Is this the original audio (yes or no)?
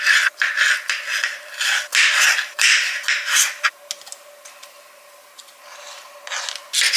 yes